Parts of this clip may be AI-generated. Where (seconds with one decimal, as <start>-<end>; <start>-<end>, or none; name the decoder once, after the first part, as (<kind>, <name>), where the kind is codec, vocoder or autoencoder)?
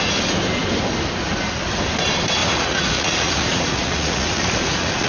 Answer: 2.4-5.1 (vocoder, Vocos)